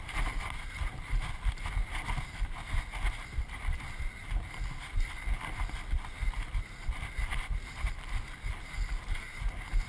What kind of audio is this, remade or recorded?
recorded